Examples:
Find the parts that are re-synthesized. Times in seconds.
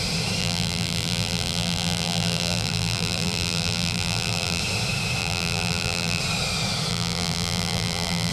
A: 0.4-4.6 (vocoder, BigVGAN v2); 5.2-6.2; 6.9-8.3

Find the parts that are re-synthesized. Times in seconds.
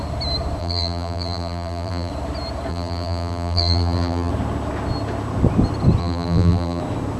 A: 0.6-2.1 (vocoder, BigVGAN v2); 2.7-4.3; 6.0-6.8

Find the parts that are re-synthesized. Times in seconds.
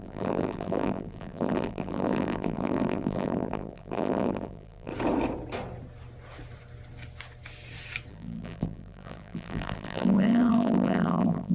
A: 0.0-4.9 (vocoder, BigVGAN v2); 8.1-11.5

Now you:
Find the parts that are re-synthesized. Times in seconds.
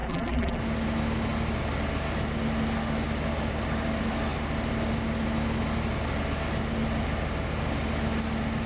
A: 0.0-0.6 (vocoder, BigVGAN v2)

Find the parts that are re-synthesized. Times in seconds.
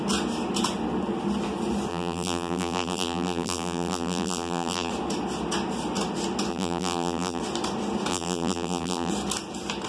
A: 1.9-4.9 (vocoder, BigVGAN v2); 6.5-7.4; 8.1-9.1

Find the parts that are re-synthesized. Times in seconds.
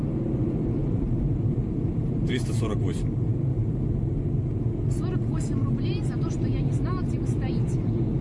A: 0.8-4.2 (vocoder, BigVGAN v2)